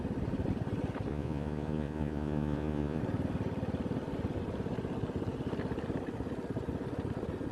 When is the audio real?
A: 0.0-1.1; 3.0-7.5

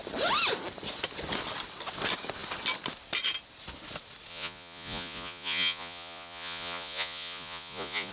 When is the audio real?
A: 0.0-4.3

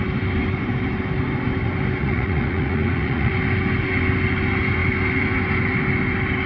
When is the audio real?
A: 0.0-2.0; 3.3-6.5

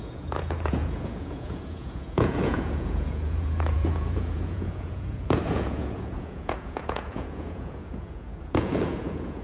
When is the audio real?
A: none

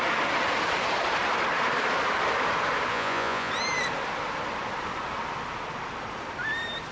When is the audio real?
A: 0.0-2.9; 3.5-6.9

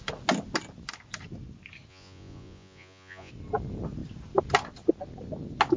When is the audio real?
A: 0.0-1.9; 3.3-5.8

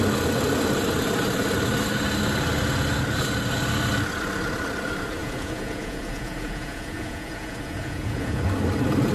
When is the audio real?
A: 0.0-5.2; 8.4-9.1

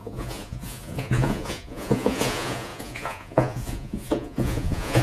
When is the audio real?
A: none